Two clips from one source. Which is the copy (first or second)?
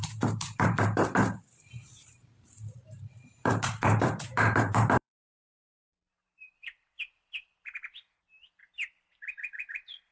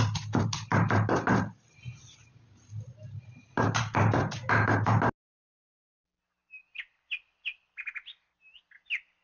first